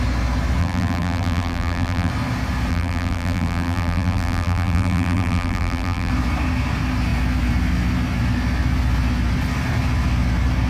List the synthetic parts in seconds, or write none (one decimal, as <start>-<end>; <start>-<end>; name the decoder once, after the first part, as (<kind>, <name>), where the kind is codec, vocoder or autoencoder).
0.6-2.1 (vocoder, BigVGAN v2); 2.7-6.1